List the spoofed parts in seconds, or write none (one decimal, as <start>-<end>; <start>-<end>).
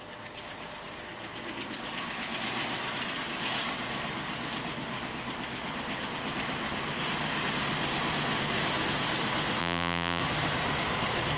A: 9.6-10.2